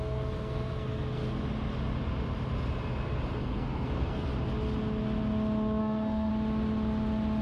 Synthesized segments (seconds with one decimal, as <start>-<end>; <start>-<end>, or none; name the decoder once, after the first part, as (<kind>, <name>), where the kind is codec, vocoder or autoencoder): 0.0-1.4 (codec, SNAC); 3.4-4.3; 5.8-6.3